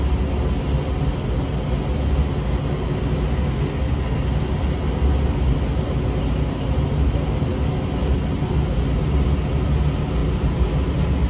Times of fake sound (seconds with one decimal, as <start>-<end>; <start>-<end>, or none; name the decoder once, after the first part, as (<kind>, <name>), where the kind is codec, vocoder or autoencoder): none